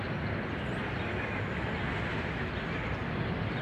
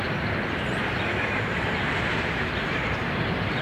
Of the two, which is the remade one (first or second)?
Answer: second